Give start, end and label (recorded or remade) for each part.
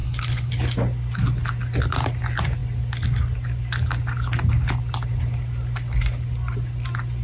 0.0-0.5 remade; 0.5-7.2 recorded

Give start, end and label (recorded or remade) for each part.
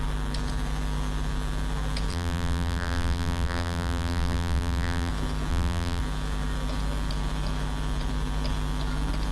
0.0-2.1 recorded; 2.1-5.1 remade; 5.1-5.5 recorded; 5.5-6.0 remade; 6.0-9.3 recorded